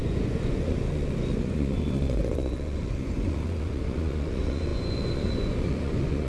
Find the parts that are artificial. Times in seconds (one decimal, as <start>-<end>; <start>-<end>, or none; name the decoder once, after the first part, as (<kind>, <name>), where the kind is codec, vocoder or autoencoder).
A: 0.0-6.3 (vocoder, Vocos)